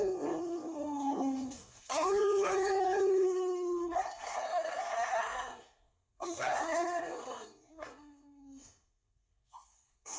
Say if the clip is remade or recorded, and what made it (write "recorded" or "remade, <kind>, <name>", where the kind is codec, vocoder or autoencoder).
remade, codec, SNAC